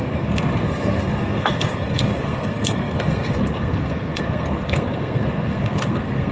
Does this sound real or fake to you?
fake